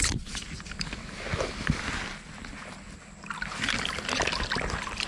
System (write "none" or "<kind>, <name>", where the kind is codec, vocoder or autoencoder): none